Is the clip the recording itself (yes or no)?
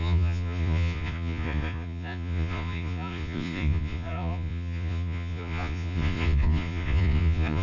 no